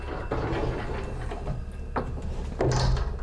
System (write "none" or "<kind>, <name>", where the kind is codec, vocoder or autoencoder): none